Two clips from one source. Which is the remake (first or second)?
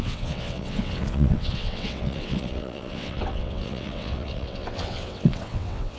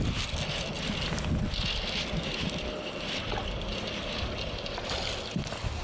first